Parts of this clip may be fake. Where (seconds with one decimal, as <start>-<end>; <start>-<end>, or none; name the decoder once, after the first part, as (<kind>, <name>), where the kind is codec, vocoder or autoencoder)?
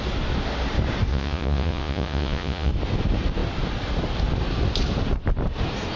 1.1-2.7 (vocoder, Vocos)